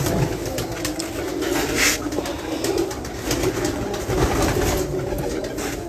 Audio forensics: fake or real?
real